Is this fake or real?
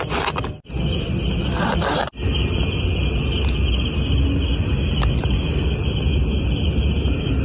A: real